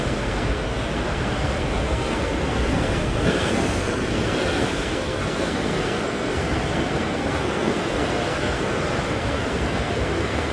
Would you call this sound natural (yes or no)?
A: no